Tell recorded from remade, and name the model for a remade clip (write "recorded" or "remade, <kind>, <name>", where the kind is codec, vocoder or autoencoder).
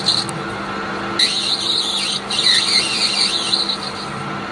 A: recorded